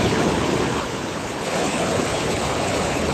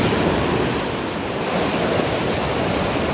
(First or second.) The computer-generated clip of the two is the first